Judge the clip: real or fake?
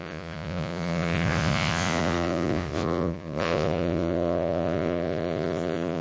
fake